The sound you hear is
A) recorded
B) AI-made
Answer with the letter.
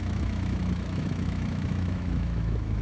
B